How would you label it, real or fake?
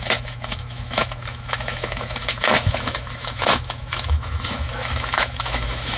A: fake